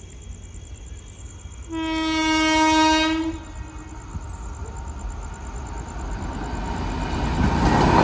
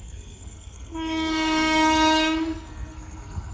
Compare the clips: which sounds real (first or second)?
first